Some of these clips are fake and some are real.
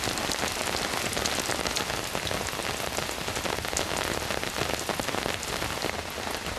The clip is real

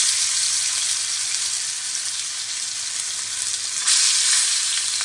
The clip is real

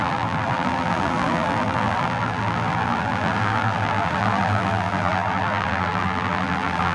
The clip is fake